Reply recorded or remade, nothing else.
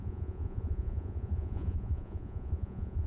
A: remade